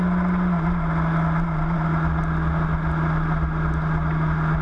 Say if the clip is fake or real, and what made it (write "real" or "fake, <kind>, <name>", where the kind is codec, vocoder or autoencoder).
real